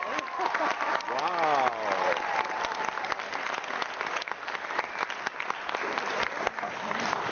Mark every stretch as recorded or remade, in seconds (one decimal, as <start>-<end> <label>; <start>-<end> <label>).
0.0-7.3 recorded